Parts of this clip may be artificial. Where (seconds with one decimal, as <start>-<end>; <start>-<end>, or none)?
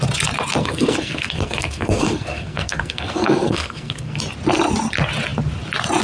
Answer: 0.6-4.2